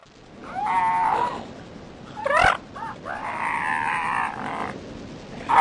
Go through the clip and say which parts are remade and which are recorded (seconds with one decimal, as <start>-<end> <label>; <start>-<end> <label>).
0.0-5.6 recorded